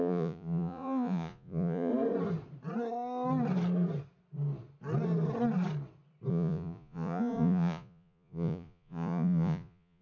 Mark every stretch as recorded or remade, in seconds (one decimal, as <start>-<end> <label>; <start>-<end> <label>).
0.0-1.9 remade; 1.9-6.3 recorded; 6.3-10.0 remade